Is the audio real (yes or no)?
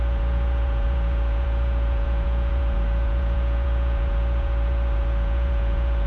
no